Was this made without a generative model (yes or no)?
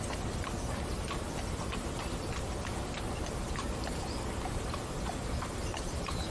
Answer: no